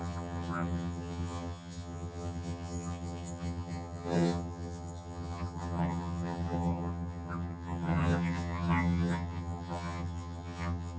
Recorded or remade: remade